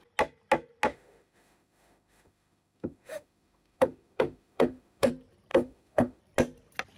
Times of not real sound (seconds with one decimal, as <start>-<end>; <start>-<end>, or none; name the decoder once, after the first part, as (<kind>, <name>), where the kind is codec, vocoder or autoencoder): 0.9-5.1 (autoencoder, DAC-VAE); 5.5-6.2